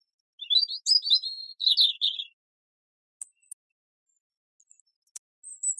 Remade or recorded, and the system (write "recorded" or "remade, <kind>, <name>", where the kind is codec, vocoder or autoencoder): recorded